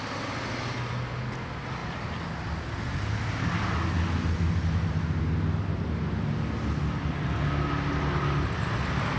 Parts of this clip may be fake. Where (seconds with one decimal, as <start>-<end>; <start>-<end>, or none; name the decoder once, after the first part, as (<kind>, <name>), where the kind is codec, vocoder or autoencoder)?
none